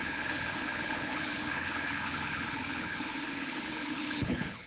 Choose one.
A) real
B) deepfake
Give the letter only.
B